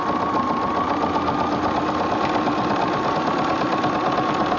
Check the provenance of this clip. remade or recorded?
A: recorded